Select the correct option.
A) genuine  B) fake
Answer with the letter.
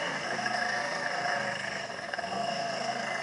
B